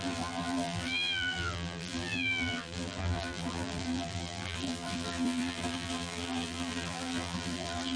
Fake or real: fake